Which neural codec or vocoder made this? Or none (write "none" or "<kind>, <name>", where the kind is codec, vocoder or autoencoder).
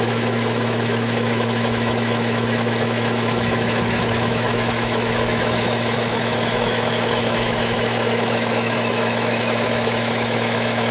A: autoencoder, DAC-VAE